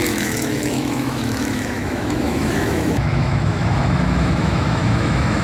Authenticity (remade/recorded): remade